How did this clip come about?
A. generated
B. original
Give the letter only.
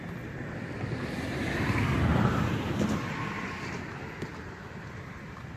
B